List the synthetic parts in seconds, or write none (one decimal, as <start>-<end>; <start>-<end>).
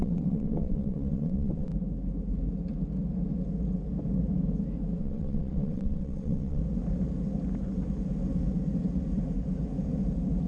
0.0-1.7; 5.0-6.6